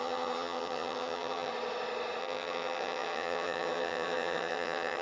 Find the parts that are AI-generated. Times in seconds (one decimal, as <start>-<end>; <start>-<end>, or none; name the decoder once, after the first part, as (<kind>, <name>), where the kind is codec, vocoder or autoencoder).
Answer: 0.0-1.5 (vocoder, HiFi-GAN); 2.2-5.0